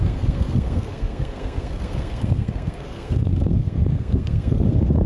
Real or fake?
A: fake